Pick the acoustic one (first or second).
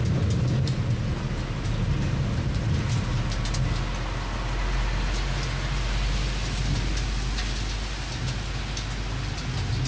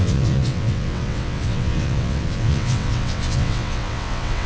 first